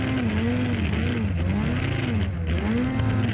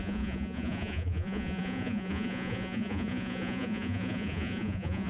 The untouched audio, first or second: first